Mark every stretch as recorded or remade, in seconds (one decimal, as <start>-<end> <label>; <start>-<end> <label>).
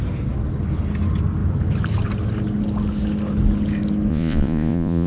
0.0-4.1 recorded; 4.1-5.1 remade